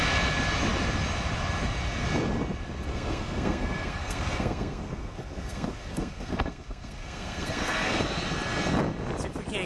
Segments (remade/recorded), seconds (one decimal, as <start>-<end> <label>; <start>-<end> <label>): 0.0-2.9 recorded; 2.9-8.0 remade; 8.0-9.7 recorded